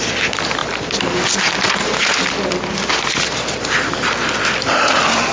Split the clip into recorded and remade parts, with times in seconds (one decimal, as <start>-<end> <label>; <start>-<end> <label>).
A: 0.0-5.3 recorded